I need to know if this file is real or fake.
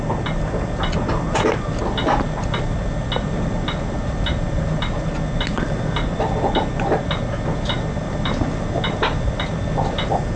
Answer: real